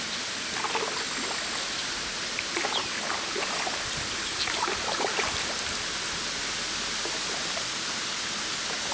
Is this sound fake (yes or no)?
no